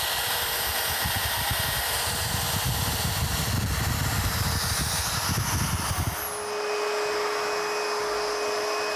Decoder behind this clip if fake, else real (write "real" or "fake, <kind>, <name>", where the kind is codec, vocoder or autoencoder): real